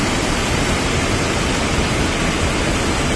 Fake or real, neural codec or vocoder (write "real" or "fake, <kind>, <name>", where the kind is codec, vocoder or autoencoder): real